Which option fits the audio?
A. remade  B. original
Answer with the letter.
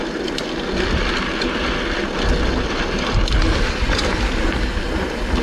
B